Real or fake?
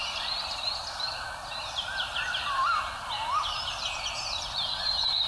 fake